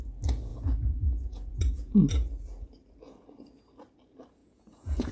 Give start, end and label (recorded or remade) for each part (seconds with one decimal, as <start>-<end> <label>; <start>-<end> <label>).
0.0-0.5 recorded; 0.5-2.1 remade; 2.1-4.4 recorded; 4.4-5.1 remade

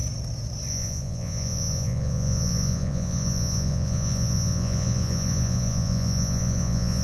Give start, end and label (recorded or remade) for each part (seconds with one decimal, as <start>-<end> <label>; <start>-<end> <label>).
0.0-0.7 recorded; 0.7-7.0 remade

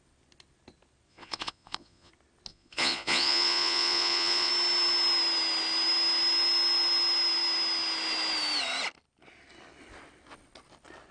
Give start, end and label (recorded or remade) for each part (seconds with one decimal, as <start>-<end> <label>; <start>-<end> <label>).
0.0-1.1 recorded; 1.1-2.1 remade; 2.1-2.5 recorded; 2.5-4.5 remade; 4.5-11.1 recorded

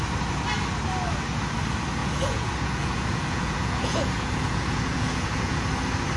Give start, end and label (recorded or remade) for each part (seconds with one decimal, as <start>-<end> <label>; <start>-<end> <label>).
0.0-2.0 recorded; 2.0-5.7 remade; 5.7-6.2 recorded

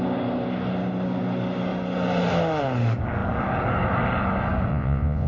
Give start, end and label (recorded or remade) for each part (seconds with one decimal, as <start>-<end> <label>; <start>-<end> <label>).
0.0-4.7 recorded; 4.7-5.3 remade

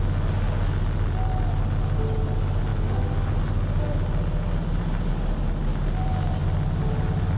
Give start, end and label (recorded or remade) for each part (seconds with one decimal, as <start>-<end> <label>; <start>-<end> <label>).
0.0-7.4 recorded

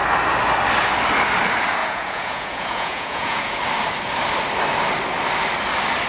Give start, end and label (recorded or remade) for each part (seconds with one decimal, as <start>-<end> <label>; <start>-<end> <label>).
0.0-1.8 recorded; 1.8-3.6 remade; 3.6-6.1 recorded